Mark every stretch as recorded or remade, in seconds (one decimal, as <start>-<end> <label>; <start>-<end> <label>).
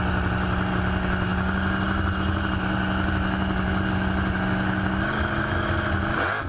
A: 0.0-6.5 recorded